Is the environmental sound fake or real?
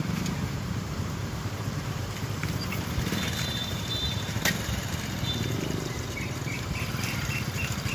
fake